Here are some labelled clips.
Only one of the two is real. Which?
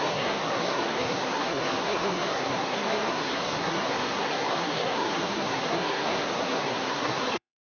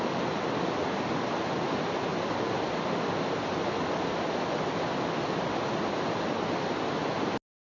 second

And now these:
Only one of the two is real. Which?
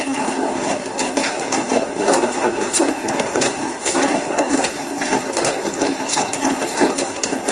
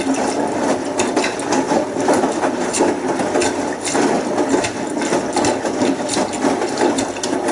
second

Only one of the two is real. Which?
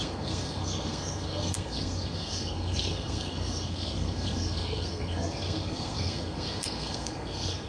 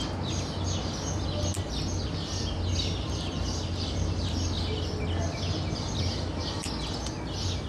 second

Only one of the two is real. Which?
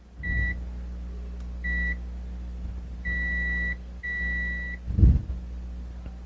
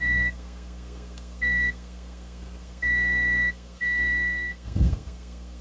first